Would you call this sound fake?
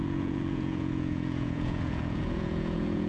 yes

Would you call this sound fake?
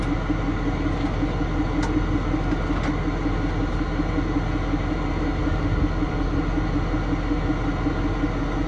no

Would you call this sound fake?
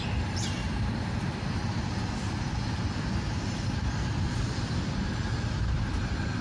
no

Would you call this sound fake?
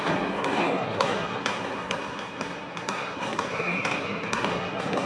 yes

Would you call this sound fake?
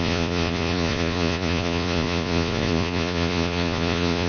yes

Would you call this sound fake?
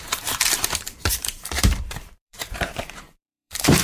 yes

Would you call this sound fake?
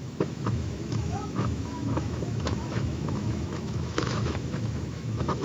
yes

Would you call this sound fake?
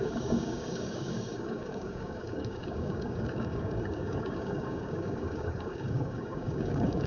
yes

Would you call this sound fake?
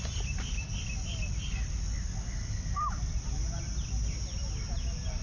no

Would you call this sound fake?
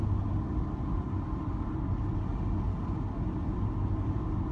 no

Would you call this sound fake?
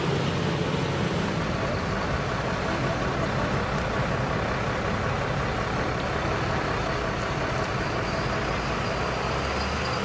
no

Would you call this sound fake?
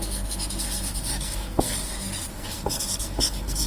yes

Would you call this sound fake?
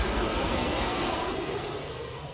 yes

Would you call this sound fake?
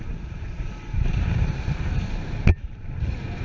yes